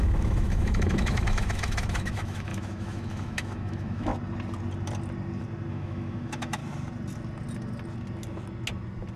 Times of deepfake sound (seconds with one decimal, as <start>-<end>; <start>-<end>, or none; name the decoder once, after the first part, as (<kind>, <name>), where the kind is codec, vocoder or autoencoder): 0.0-4.1 (autoencoder, DAC-VAE); 5.7-6.6